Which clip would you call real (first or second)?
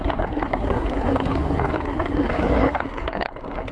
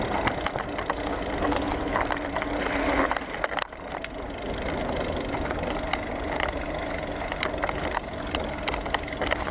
second